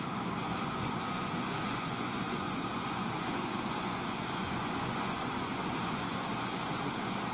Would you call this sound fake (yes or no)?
yes